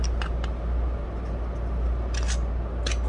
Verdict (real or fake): real